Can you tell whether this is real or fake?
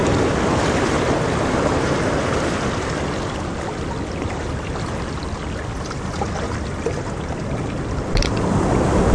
real